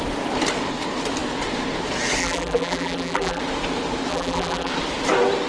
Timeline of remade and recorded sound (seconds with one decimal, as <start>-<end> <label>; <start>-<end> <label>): 0.0-2.2 recorded; 2.2-3.4 remade; 3.4-4.1 recorded; 4.1-4.7 remade; 4.7-5.5 recorded